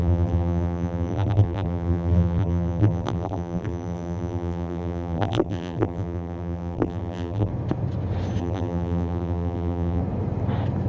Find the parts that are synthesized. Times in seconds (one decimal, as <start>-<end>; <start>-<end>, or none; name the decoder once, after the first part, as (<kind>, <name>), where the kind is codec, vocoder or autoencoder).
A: 0.0-7.5 (vocoder, BigVGAN v2); 8.4-10.0